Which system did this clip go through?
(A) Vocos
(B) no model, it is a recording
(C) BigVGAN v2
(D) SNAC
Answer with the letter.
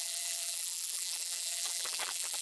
C